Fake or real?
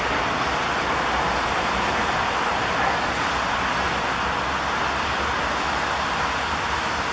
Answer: real